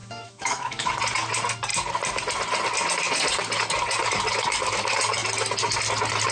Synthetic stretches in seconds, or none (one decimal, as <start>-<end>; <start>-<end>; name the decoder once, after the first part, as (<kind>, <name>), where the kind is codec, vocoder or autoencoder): 0.0-0.9 (autoencoder, DAC-VAE)